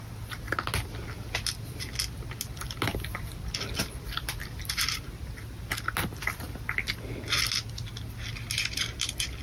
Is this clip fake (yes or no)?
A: no